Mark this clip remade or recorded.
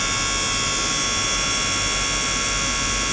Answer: recorded